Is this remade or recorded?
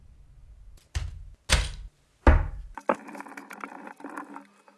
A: recorded